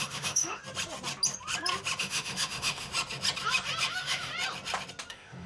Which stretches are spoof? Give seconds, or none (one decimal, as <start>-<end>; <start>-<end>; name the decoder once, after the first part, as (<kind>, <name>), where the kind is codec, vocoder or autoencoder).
0.0-0.6 (autoencoder, DAC-VAE); 2.0-2.9; 3.9-4.3; 5.1-5.5

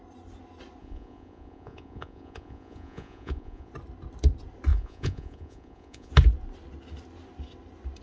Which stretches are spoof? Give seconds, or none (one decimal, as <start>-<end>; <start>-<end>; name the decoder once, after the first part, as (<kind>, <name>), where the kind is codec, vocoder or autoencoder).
0.8-3.7 (vocoder, Vocos); 4.7-6.1

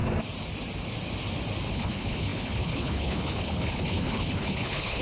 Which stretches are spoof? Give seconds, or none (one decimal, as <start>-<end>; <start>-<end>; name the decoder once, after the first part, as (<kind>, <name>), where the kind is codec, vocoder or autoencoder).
1.7-5.0 (codec, HILCodec)

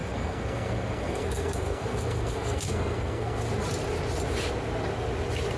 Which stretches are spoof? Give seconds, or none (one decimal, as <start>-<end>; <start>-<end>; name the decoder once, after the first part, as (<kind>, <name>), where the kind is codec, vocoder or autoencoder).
0.0-3.4 (codec, SNAC)

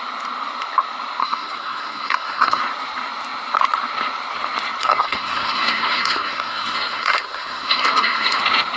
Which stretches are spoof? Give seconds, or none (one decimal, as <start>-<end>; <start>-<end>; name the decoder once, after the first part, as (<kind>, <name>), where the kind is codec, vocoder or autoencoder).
1.2-2.6 (codec, SNAC); 4.8-8.4

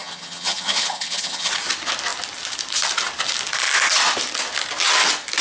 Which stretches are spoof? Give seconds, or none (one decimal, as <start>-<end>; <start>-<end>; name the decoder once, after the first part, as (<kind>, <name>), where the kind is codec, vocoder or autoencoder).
0.0-1.5 (vocoder, HiFi-GAN)

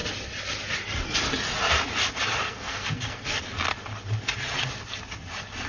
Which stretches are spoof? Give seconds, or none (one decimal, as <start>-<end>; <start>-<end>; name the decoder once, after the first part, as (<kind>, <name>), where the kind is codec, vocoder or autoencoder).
2.4-3.4 (codec, SNAC)